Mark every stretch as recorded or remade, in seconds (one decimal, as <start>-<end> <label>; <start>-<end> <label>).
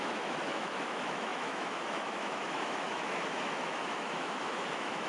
0.0-5.1 remade